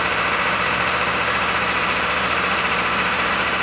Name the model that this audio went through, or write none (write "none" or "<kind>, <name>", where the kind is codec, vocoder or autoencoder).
vocoder, BigVGAN v2